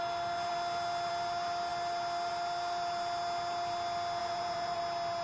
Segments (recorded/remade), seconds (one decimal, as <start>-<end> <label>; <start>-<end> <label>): 0.0-4.2 recorded; 4.2-4.8 remade; 4.8-5.2 recorded